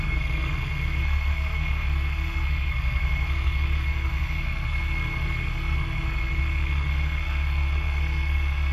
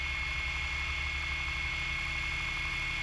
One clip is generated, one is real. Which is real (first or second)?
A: second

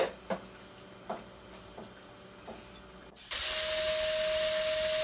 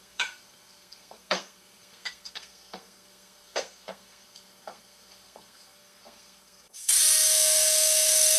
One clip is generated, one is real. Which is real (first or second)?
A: first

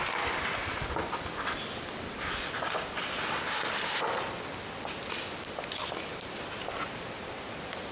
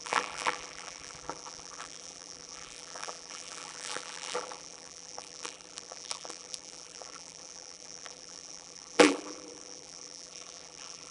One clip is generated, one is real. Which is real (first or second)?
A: first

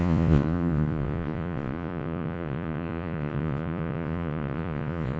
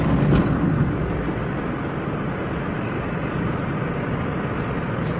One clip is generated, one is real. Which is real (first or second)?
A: second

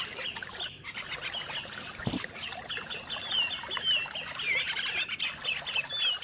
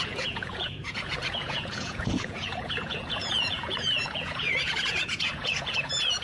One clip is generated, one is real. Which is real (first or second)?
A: first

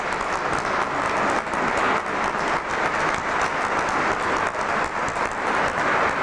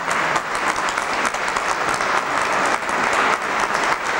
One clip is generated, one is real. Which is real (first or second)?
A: first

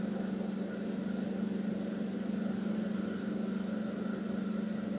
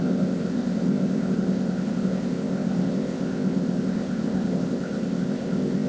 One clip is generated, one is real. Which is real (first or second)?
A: first